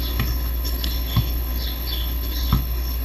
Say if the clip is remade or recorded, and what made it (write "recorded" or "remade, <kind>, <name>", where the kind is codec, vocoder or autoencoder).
remade, codec, HILCodec